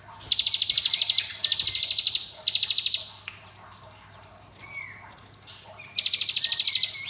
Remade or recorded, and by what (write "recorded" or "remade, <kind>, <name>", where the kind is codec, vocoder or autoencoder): recorded